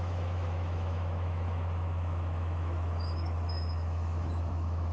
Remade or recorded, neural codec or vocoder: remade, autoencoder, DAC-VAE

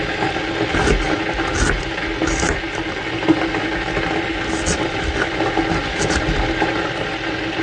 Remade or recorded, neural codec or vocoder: recorded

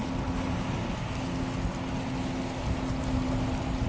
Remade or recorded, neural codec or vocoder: recorded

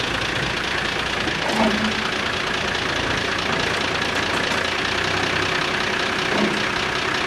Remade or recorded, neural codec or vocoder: recorded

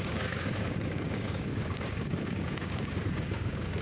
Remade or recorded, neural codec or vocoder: remade, codec, DAC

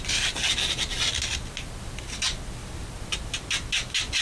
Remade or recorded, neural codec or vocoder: recorded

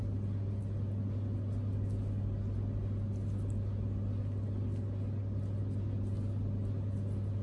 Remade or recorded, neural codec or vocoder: recorded